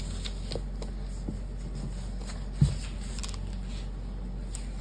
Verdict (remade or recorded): recorded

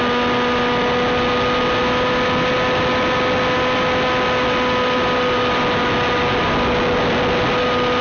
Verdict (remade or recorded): recorded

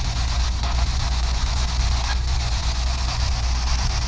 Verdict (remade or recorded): remade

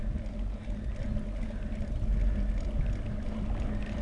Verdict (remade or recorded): recorded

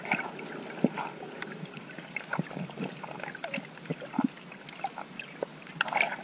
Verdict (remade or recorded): recorded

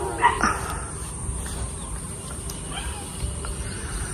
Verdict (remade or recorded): recorded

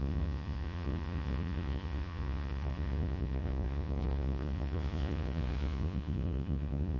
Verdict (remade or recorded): remade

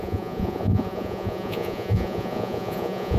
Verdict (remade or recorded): remade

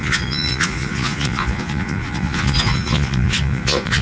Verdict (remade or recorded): remade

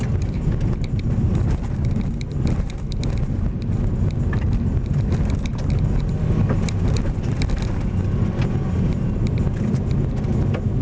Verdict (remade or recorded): recorded